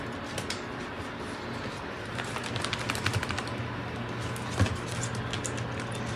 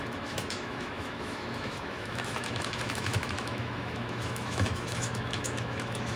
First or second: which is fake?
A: second